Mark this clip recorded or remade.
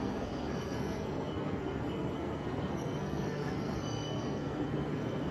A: remade